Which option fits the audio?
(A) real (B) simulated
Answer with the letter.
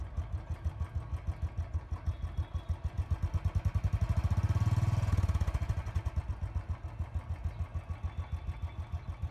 A